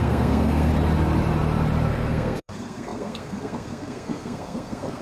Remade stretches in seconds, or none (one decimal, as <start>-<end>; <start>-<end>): 0.0-0.7; 1.9-5.0